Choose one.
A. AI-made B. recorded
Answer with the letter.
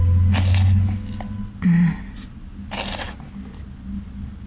B